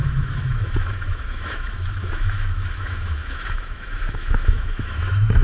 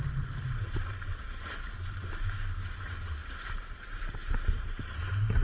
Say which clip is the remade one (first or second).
first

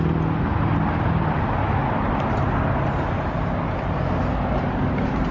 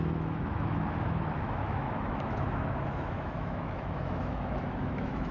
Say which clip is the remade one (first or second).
second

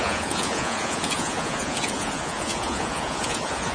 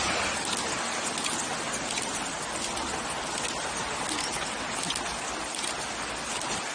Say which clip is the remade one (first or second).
first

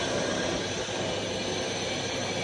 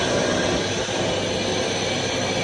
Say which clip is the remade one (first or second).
first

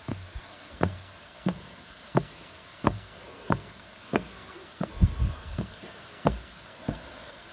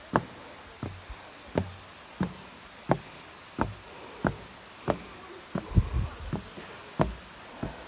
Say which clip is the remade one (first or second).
first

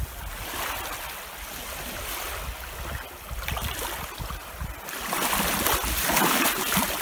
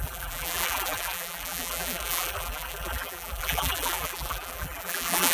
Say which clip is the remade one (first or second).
second